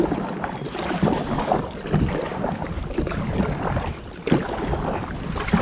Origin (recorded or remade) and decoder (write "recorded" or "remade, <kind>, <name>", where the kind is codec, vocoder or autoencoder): remade, vocoder, BigVGAN v2